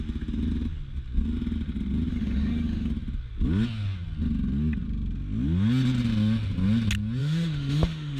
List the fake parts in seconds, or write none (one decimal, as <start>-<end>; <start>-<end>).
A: 2.1-2.9; 7.2-8.2